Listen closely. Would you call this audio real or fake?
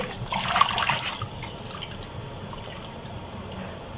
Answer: real